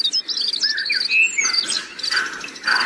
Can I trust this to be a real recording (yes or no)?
yes